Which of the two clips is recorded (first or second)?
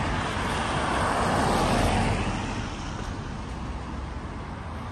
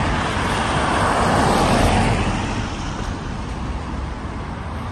first